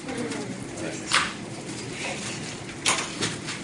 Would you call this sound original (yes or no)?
yes